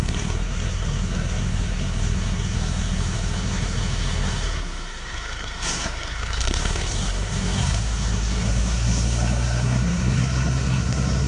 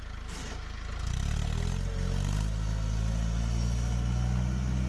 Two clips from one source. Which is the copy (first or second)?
first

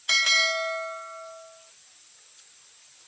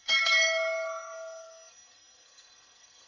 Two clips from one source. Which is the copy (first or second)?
second